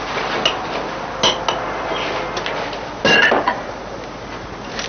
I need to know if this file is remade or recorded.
recorded